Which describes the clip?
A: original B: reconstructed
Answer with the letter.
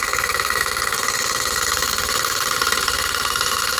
B